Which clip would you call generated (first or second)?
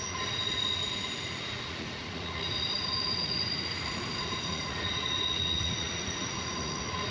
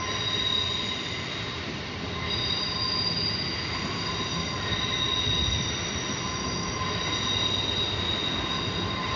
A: first